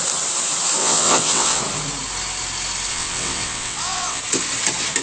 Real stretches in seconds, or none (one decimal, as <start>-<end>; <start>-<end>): 0.0-0.8; 1.6-2.9; 4.2-5.0